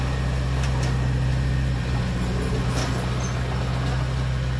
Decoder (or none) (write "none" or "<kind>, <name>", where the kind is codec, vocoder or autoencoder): none